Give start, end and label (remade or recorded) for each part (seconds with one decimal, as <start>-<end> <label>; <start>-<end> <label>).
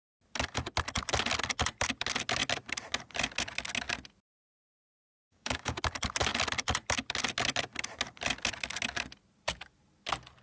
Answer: 0.0-4.5 recorded; 4.5-5.8 remade; 5.8-10.4 recorded